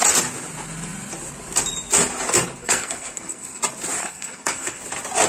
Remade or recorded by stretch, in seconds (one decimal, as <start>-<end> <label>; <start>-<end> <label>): 0.0-2.6 recorded; 2.6-3.6 remade; 3.6-4.0 recorded; 4.0-4.8 remade; 4.8-5.3 recorded